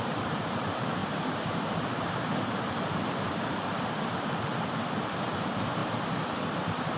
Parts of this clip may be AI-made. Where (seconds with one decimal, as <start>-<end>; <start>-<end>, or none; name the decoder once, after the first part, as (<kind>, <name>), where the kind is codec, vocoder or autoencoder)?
0.0-5.8 (vocoder, BigVGAN v2)